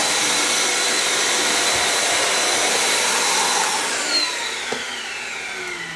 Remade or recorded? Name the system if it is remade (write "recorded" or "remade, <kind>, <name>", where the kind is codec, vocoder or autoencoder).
recorded